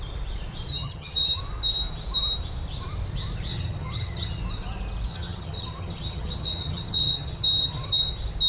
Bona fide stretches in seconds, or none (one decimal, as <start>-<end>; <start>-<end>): 0.0-0.7; 1.4-3.5; 4.4-5.1; 8.0-8.5